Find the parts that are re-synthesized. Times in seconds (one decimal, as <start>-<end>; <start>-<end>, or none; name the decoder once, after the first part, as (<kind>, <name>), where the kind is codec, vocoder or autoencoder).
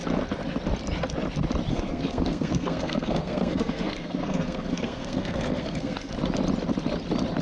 1.7-6.1 (codec, SNAC)